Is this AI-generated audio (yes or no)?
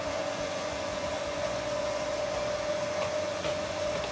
yes